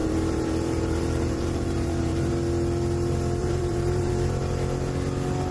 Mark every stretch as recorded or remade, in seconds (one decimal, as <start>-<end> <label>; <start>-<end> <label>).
0.0-2.3 remade; 2.3-3.4 recorded; 3.4-4.1 remade; 4.1-5.5 recorded